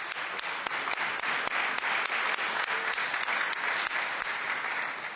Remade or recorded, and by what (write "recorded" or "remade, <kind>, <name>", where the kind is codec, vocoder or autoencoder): recorded